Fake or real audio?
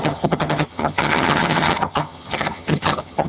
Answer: fake